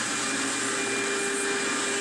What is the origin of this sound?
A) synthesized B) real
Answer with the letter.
B